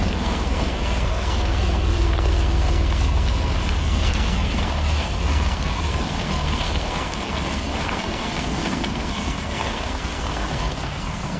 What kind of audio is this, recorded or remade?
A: remade